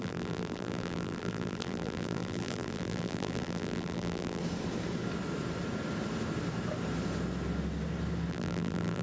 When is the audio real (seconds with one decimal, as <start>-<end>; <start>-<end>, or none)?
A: 4.4-8.3